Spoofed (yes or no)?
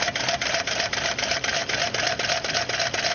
no